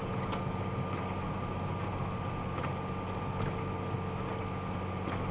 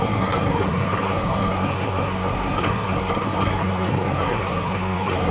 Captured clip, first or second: first